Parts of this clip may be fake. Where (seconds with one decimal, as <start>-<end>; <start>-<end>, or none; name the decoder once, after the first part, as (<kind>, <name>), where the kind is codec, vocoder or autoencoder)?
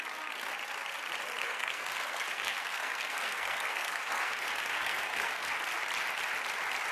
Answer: 1.4-5.5 (codec, SNAC)